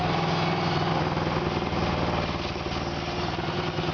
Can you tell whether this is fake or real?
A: real